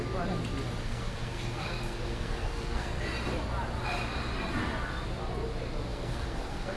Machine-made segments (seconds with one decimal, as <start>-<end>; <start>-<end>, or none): 0.8-3.0; 5.9-6.8